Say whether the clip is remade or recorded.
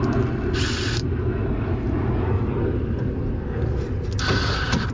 recorded